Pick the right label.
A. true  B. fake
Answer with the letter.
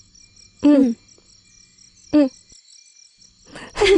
A